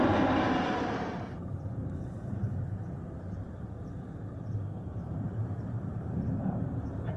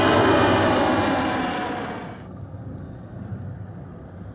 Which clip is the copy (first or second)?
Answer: first